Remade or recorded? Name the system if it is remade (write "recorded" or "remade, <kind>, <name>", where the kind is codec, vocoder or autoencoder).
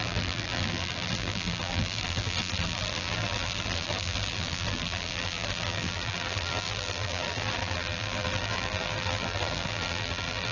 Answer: remade, vocoder, BigVGAN v2